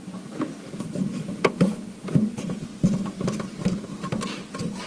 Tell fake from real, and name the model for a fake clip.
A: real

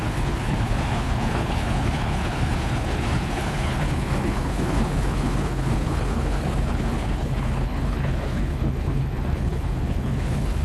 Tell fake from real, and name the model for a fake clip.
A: fake, codec, HILCodec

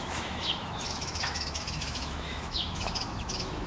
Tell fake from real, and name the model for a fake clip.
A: fake, autoencoder, DAC-VAE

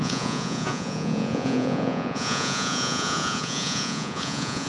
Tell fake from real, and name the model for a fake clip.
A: fake, vocoder, Vocos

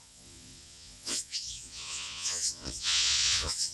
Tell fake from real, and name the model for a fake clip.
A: fake, vocoder, Vocos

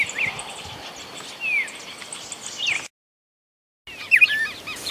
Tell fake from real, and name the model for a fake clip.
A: real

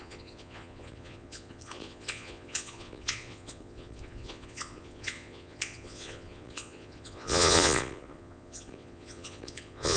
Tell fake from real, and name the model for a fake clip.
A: fake, vocoder, Vocos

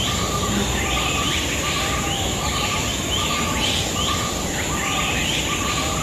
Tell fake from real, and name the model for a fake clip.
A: real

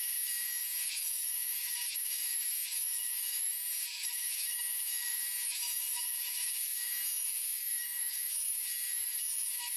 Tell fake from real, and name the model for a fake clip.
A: fake, autoencoder, DAC-VAE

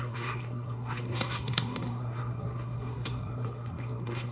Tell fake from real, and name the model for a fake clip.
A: fake, codec, SNAC